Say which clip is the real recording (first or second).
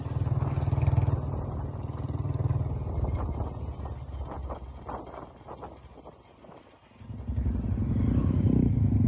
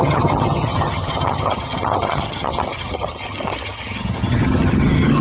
first